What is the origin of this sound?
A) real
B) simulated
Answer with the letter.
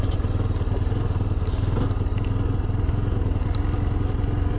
A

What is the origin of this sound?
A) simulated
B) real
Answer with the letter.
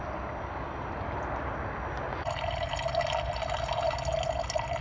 B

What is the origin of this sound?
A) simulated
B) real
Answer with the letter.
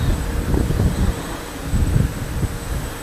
B